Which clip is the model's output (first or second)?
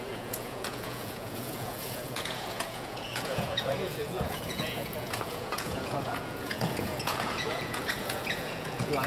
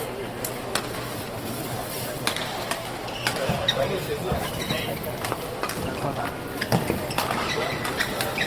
first